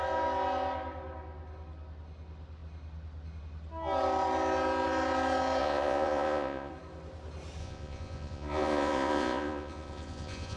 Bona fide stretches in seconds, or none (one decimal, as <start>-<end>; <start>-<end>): 0.0-5.6; 6.7-7.6